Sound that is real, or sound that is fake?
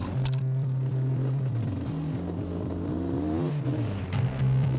real